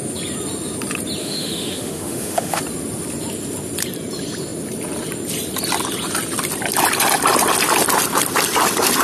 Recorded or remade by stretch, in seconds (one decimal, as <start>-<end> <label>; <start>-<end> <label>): 0.0-1.2 recorded; 1.2-2.6 remade; 2.6-9.0 recorded